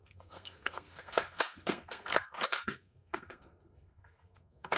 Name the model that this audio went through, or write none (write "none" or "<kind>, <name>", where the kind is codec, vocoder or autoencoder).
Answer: codec, SNAC